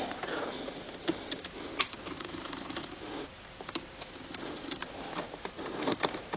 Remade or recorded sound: recorded